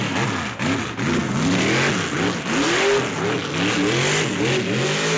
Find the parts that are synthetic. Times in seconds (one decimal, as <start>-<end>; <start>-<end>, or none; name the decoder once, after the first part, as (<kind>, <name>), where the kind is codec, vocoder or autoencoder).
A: none